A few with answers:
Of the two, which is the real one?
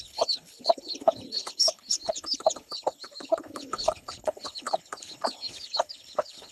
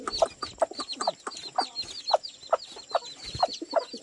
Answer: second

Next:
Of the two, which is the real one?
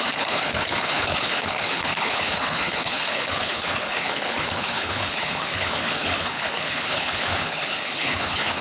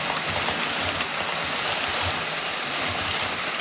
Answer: second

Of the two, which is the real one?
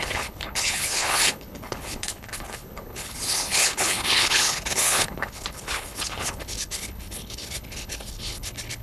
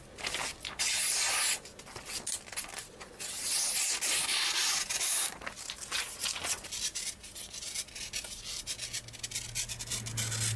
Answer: second